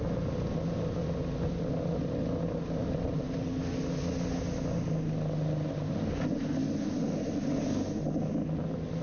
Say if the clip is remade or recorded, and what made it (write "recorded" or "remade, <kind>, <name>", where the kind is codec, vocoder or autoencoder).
recorded